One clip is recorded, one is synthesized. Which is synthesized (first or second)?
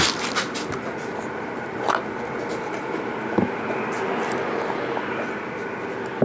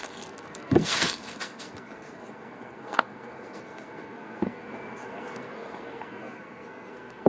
second